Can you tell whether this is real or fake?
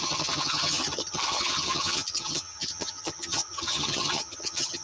fake